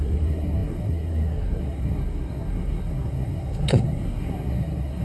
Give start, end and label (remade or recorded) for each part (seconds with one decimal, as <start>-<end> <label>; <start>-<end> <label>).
0.0-5.0 remade